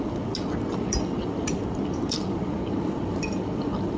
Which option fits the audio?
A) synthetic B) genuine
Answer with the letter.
B